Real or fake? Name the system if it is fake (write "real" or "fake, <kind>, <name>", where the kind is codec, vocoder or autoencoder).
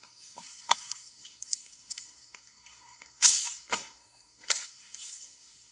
fake, codec, SNAC